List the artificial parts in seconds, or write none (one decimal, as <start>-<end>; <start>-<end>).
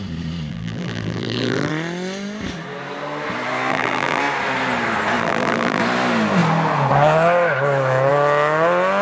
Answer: 0.5-1.7; 3.7-4.2; 5.2-5.8